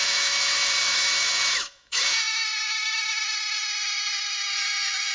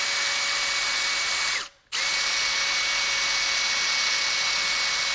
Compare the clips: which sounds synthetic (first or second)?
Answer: first